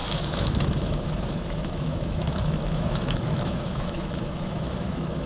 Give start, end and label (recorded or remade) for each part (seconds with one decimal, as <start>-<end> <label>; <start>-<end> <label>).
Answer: 0.0-5.3 remade